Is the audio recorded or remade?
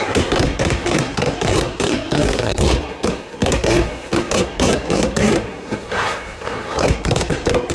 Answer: remade